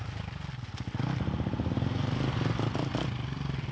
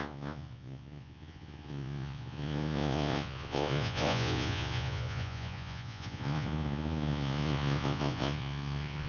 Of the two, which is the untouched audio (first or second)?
first